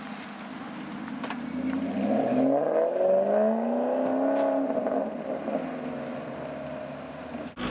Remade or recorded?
recorded